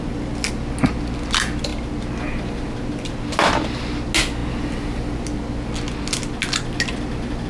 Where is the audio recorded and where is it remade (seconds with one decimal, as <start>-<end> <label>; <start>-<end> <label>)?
0.0-7.5 recorded

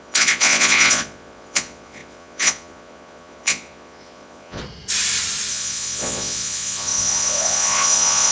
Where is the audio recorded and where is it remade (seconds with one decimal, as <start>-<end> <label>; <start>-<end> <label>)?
0.0-4.6 remade; 4.6-5.5 recorded; 5.5-8.3 remade